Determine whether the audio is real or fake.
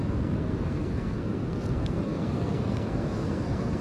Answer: fake